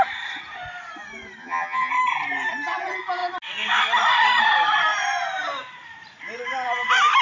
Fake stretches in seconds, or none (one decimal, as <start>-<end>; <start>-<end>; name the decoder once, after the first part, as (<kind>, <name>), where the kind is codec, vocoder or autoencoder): 1.4-1.9 (vocoder, HiFi-GAN)